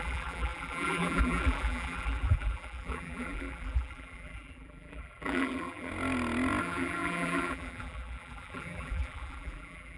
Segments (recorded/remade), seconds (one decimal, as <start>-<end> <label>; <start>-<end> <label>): 0.0-5.9 remade; 5.9-6.6 recorded; 6.6-10.0 remade

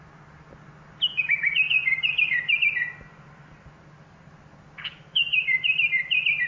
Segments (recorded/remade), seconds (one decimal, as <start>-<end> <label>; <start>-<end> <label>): 0.0-6.5 remade

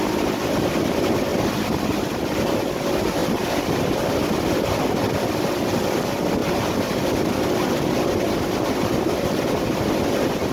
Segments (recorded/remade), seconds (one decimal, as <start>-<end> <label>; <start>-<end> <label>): 0.0-1.3 recorded; 1.3-2.6 remade; 2.6-3.2 recorded; 3.2-4.3 remade; 4.3-6.4 recorded; 6.4-7.3 remade; 7.3-10.5 recorded

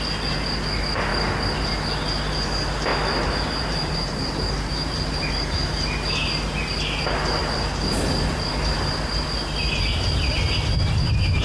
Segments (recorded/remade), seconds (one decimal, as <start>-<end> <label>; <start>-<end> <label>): 0.0-2.9 recorded; 2.9-5.3 remade; 5.3-11.4 recorded

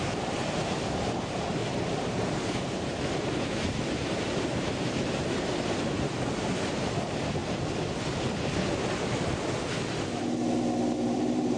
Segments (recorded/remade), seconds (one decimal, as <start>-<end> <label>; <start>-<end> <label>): 0.0-1.6 remade; 1.6-2.3 recorded; 2.3-7.4 remade; 7.4-11.0 recorded; 11.0-11.6 remade

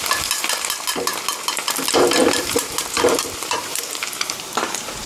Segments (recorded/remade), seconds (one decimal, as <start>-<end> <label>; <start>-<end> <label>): 0.0-0.9 remade; 0.9-1.7 recorded; 1.7-5.1 remade